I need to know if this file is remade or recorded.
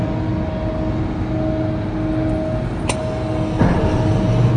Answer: recorded